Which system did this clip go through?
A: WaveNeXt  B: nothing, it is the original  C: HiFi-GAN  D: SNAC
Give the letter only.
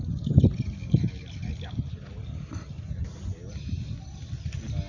B